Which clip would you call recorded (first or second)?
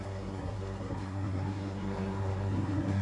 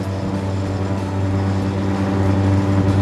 second